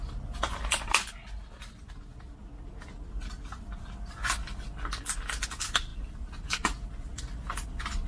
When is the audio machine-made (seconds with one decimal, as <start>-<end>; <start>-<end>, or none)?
none